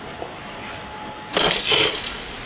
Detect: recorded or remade recorded